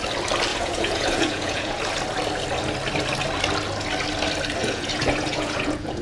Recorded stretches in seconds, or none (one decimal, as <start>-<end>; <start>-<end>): 0.0-0.5; 1.8-4.6